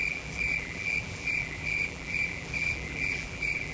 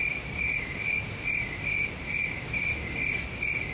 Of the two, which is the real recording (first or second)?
second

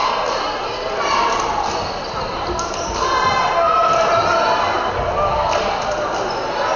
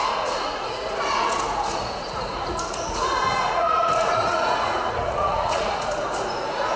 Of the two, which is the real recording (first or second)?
first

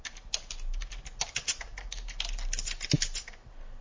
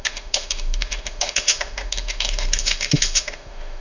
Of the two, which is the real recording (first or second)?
first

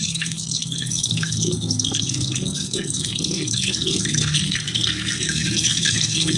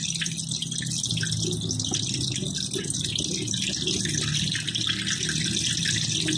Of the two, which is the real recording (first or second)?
second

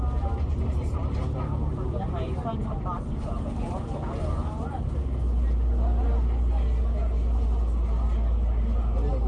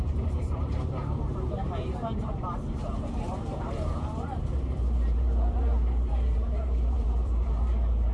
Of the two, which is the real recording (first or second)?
first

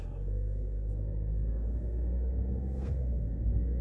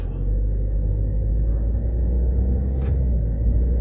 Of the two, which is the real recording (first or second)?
second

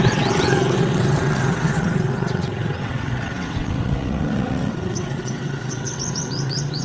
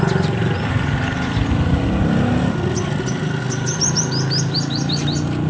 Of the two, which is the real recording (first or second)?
second